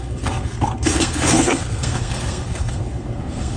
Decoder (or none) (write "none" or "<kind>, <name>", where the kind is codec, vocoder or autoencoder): codec, SNAC